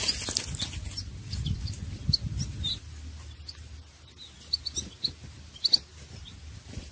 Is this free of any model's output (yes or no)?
yes